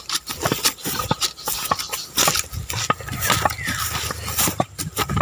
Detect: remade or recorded remade